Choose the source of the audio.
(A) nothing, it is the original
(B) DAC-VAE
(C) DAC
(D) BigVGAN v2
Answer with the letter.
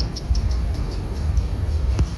C